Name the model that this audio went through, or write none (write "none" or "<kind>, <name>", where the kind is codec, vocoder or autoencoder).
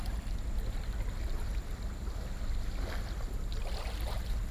none